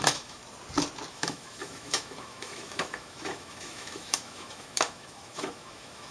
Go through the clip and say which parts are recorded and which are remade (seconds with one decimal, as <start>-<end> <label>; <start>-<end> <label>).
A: 0.0-0.4 remade; 0.4-1.1 recorded; 1.1-6.1 remade